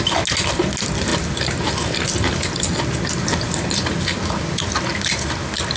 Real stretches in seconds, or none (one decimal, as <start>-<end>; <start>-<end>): 0.0-5.8